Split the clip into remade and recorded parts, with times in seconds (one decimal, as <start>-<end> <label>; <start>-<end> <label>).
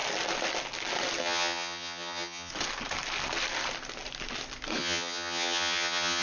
0.0-1.2 recorded; 1.2-2.5 remade; 2.5-4.8 recorded; 4.8-6.2 remade